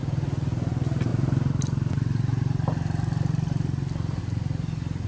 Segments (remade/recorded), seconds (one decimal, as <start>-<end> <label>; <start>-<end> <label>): 0.0-5.1 recorded